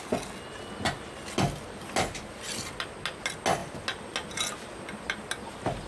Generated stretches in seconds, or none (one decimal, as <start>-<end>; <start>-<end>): none